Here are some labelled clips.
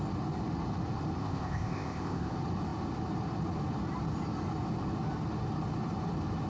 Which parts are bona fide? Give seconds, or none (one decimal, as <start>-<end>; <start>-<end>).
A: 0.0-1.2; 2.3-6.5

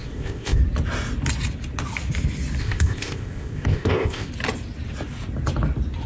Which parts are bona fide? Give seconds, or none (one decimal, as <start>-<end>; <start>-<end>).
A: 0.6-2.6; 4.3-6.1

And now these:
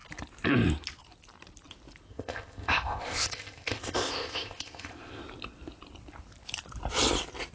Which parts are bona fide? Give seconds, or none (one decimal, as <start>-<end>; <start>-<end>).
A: 0.0-2.1; 5.2-7.5

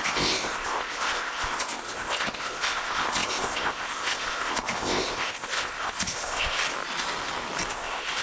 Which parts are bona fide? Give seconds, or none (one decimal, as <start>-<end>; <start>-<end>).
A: 6.6-7.7

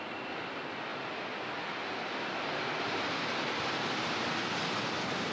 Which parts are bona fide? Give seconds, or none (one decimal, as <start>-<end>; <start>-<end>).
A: 0.0-5.3

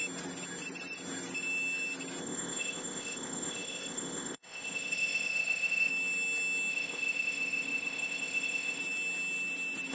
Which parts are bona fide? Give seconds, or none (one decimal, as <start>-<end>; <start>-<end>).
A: 0.0-2.2; 5.9-6.7; 8.8-9.9

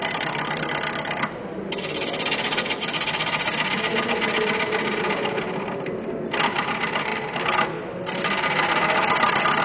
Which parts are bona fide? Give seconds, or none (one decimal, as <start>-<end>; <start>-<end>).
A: 0.0-9.6

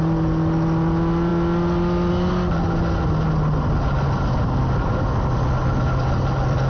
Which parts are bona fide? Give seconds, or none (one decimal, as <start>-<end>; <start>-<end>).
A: 0.0-6.7